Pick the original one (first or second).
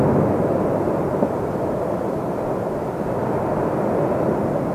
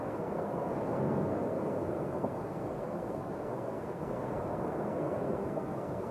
first